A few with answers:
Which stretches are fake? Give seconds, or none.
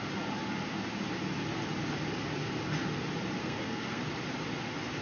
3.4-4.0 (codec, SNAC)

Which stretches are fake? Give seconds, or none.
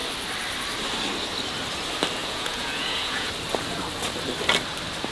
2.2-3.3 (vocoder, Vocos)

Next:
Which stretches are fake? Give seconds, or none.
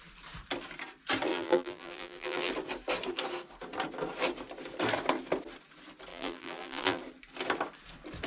1.3-2.5 (vocoder, BigVGAN v2); 6.1-7.0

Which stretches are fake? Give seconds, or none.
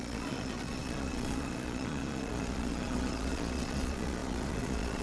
0.0-5.0 (vocoder, Vocos)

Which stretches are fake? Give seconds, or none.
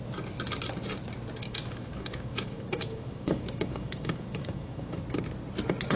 1.4-5.0 (autoencoder, DAC-VAE)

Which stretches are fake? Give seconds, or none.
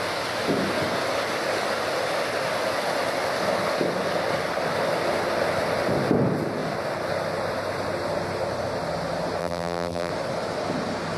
9.4-10.1 (vocoder, BigVGAN v2)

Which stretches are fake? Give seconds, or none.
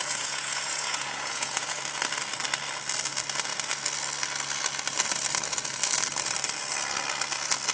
0.0-1.8 (vocoder, Vocos)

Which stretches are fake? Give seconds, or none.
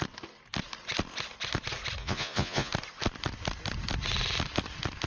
2.0-2.7 (vocoder, Vocos)